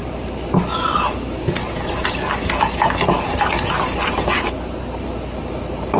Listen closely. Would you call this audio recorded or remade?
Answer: recorded